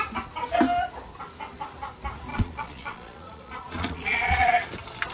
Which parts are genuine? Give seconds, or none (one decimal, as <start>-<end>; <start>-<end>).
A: 0.0-2.3; 4.5-5.1